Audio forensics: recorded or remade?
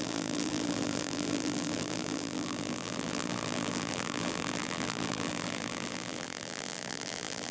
remade